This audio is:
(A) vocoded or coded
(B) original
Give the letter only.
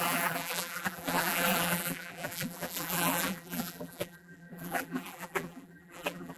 A